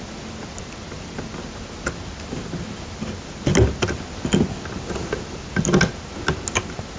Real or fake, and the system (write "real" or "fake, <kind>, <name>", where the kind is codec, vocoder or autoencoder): real